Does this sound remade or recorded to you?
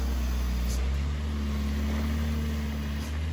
recorded